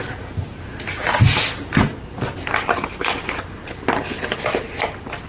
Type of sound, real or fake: real